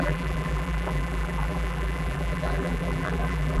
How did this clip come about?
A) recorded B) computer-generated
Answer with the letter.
B